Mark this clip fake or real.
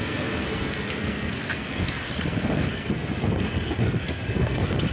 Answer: fake